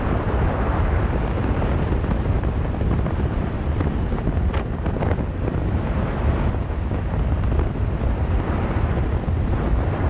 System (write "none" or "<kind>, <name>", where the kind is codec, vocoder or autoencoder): vocoder, BigVGAN v2